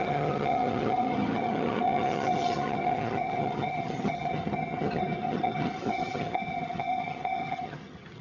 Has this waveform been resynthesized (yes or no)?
yes